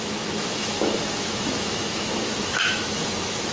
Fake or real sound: fake